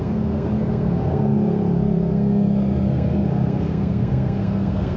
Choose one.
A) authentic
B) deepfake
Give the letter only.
B